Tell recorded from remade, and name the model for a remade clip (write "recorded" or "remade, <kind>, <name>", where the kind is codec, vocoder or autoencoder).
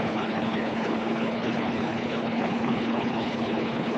remade, codec, HILCodec